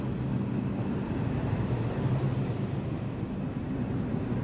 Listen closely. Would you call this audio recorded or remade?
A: recorded